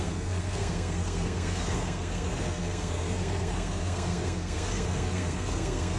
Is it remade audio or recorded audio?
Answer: remade